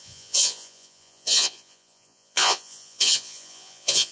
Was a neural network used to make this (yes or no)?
yes